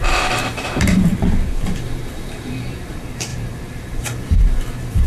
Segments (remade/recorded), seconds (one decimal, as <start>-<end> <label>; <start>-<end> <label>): 0.0-5.1 remade

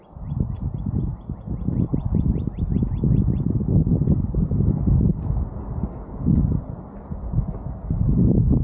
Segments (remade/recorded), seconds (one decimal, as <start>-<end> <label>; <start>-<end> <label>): 0.0-8.6 recorded

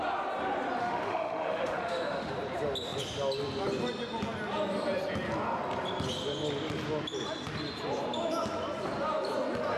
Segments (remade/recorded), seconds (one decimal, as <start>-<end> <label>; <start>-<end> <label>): 0.0-0.8 recorded; 0.8-2.3 remade; 2.3-9.8 recorded

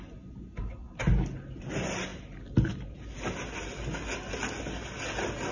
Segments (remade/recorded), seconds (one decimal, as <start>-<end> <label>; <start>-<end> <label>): 0.0-5.5 recorded